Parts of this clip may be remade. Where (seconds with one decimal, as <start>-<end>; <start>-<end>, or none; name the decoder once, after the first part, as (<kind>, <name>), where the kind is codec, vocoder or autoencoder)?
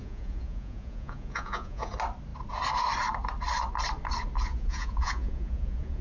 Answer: 0.0-1.9 (vocoder, Vocos); 4.5-6.0